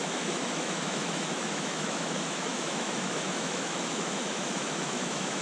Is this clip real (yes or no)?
no